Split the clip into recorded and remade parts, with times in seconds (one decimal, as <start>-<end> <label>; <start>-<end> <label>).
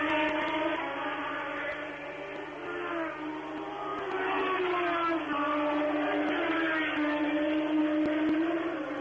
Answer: 0.0-9.0 recorded